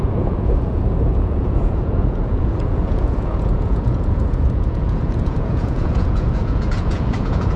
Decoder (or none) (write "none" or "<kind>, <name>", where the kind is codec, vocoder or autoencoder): vocoder, Vocos